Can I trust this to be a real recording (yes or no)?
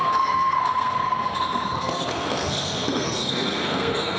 no